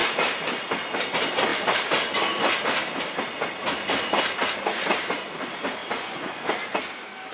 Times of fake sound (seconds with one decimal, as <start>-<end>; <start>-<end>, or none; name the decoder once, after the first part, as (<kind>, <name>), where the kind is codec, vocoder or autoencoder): 5.8-6.4 (vocoder, Vocos)